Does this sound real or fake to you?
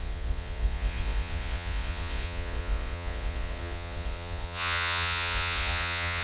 fake